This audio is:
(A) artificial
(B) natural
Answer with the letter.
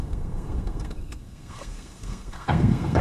A